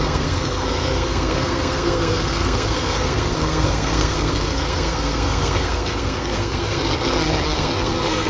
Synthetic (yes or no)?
yes